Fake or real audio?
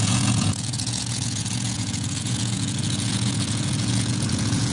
fake